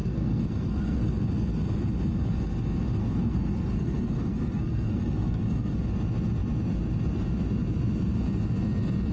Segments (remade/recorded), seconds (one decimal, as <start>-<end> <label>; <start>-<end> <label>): 0.0-1.2 remade; 1.2-3.0 recorded; 3.0-5.8 remade; 5.8-9.1 recorded